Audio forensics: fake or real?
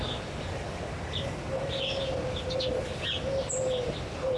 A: real